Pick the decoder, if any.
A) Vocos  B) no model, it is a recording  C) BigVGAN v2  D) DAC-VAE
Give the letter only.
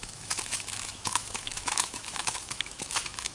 D